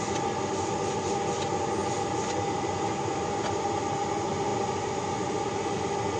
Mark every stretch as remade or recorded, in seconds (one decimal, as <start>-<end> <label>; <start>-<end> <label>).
0.0-6.2 recorded